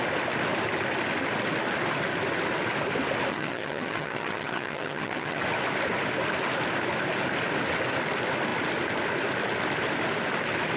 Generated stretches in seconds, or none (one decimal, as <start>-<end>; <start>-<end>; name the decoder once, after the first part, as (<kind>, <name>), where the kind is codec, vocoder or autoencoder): 3.3-5.4 (vocoder, HiFi-GAN)